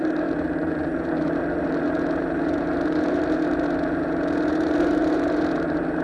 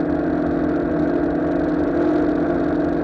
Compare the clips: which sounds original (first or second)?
second